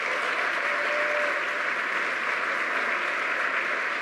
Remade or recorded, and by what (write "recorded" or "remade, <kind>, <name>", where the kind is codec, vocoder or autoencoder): recorded